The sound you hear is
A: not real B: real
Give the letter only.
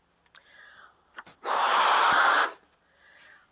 B